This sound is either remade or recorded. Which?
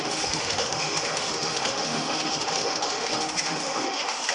remade